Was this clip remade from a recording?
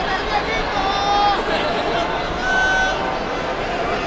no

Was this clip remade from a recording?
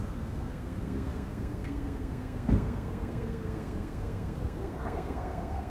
yes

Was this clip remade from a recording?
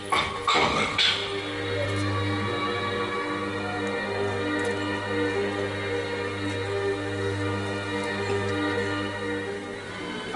no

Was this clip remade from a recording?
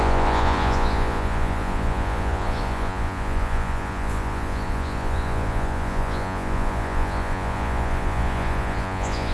yes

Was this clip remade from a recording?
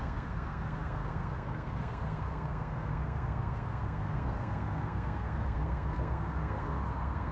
yes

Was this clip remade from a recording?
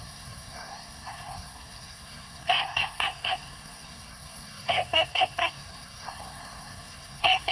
yes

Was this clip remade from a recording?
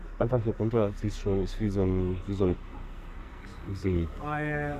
yes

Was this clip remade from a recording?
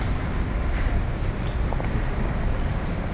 no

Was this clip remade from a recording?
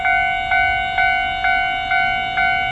no